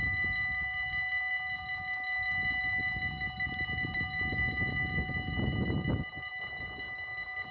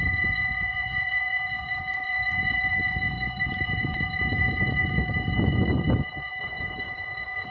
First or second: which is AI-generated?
second